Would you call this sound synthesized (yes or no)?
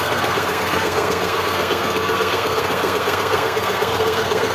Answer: yes